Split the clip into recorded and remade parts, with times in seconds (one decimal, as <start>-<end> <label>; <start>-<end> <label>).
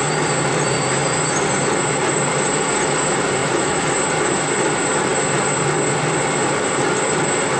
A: 0.0-3.4 recorded; 3.4-3.9 remade; 3.9-7.6 recorded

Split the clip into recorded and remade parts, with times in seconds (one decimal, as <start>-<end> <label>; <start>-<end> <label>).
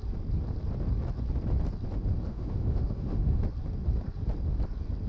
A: 0.0-2.3 recorded; 2.3-3.4 remade; 3.4-5.1 recorded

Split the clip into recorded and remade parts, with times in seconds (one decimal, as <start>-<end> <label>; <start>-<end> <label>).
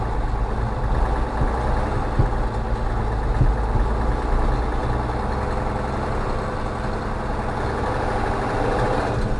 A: 0.0-9.4 recorded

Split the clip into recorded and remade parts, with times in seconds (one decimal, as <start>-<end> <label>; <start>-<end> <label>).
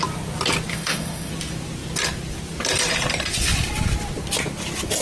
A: 0.0-0.7 recorded; 0.7-1.3 remade; 1.3-5.0 recorded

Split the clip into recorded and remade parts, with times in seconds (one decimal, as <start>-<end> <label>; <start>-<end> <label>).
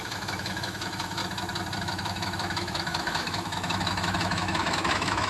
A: 0.0-1.2 remade; 1.2-1.8 recorded; 1.8-5.3 remade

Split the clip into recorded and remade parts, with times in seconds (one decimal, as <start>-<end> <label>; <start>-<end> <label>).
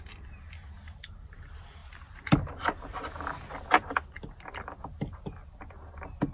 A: 0.0-6.3 recorded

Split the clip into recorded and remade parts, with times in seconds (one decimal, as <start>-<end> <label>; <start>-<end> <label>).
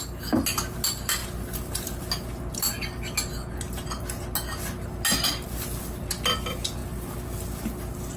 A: 0.0-8.2 recorded